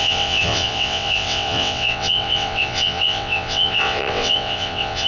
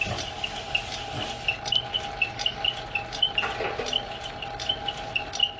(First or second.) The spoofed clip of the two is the first